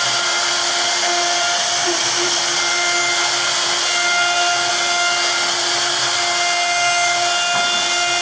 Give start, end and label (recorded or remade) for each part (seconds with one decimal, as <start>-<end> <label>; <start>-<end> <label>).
0.0-8.2 recorded

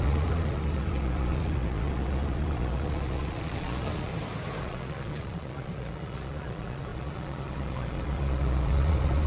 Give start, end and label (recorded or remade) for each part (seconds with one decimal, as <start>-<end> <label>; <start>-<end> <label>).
0.0-4.1 remade; 4.1-4.6 recorded; 4.6-9.3 remade